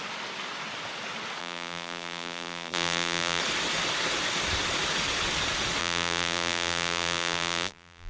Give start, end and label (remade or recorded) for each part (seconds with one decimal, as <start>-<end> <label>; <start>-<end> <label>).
0.0-1.4 recorded; 1.4-3.4 remade; 3.4-5.8 recorded; 5.8-8.1 remade